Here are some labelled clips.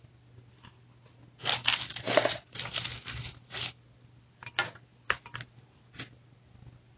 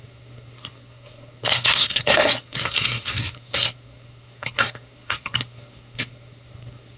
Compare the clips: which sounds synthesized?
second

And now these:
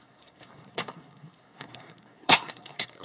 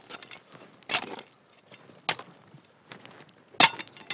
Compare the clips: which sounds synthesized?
first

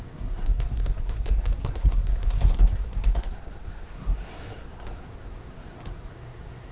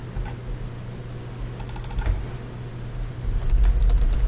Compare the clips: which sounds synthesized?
first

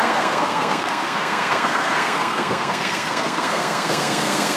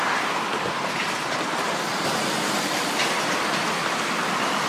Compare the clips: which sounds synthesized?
first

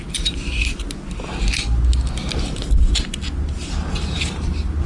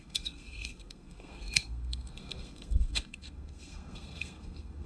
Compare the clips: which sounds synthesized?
second